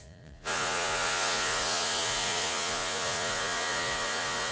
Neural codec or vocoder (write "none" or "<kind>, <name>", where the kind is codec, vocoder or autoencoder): vocoder, Vocos